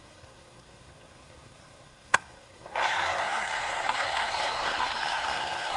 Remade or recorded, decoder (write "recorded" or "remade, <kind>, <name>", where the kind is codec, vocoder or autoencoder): remade, codec, SNAC